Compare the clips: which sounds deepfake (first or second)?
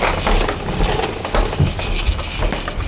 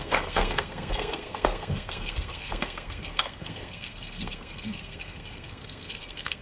second